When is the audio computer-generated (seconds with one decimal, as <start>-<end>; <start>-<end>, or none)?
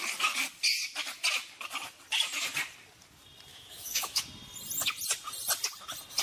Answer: 3.5-4.2